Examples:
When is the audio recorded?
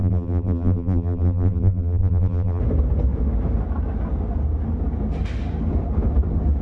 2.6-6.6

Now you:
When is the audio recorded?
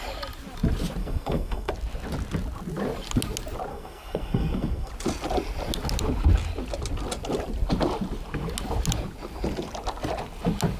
0.0-1.0; 1.7-3.7; 4.9-10.8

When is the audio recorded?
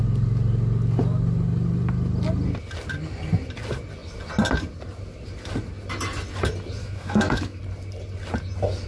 0.0-6.8; 7.6-8.9